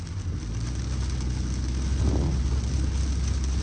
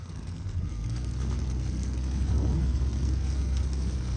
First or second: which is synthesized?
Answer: second